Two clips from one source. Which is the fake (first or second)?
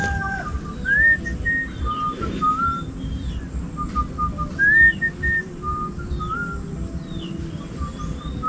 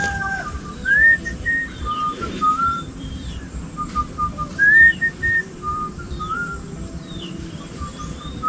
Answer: second